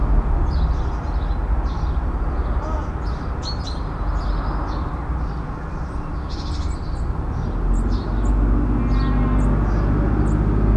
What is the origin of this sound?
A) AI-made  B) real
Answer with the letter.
B